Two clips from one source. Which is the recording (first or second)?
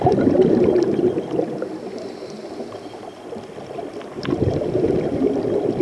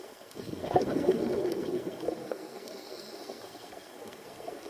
first